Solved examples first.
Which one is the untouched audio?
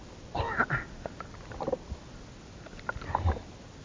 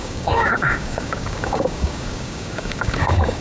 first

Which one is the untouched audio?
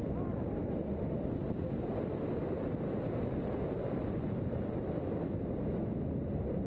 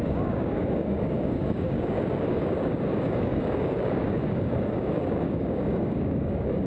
first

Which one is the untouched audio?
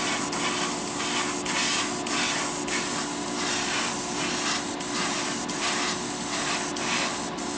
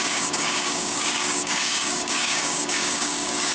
first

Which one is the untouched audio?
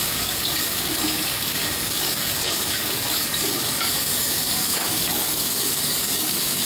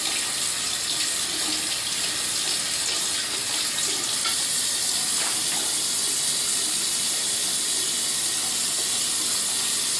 second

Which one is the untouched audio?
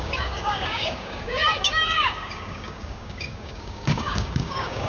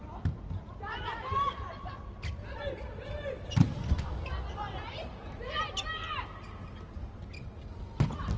second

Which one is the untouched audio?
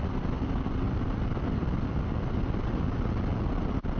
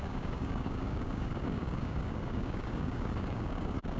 first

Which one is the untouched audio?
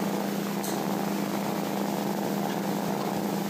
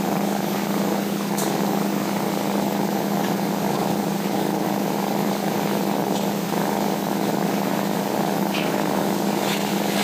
first